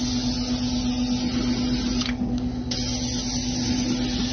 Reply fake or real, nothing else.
real